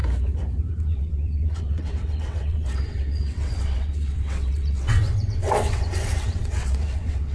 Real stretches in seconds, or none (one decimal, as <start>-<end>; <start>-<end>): 0.0-0.7